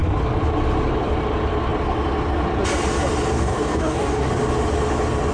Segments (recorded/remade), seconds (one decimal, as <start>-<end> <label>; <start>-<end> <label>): 0.0-3.3 recorded; 3.3-4.3 remade; 4.3-5.3 recorded